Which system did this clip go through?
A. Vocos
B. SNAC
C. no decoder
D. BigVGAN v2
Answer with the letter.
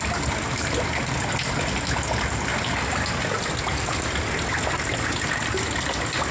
C